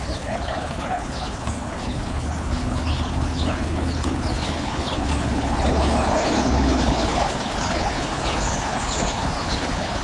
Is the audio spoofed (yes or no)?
yes